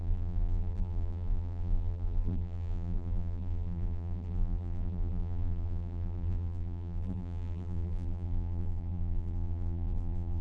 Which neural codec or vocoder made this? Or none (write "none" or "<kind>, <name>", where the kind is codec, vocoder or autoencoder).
vocoder, BigVGAN v2